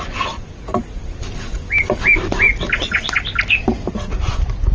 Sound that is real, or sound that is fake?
real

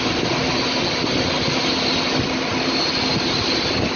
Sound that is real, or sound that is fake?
real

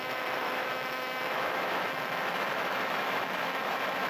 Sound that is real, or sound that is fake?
fake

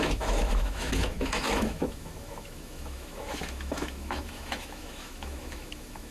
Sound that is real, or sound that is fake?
fake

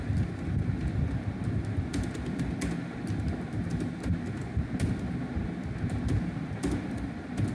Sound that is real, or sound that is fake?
real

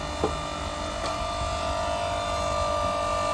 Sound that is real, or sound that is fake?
real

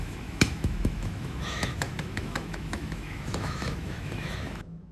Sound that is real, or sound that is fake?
fake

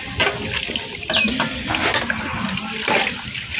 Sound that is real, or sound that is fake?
real